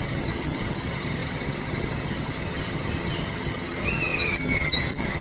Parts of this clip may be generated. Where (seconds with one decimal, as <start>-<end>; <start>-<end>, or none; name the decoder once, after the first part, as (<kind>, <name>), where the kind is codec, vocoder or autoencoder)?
0.0-5.2 (vocoder, HiFi-GAN)